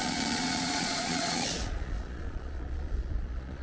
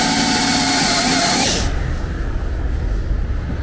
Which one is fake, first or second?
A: first